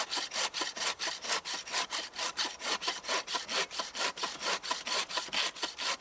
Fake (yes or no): no